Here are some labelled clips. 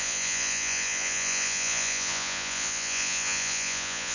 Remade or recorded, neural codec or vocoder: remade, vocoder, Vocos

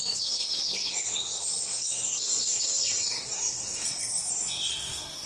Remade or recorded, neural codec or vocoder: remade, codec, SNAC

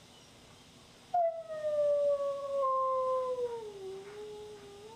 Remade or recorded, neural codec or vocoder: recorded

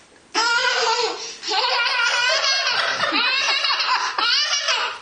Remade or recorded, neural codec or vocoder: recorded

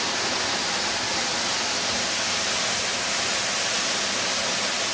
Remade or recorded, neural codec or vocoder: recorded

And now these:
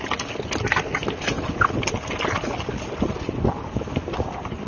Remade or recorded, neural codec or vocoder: recorded